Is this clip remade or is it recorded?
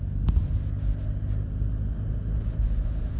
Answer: recorded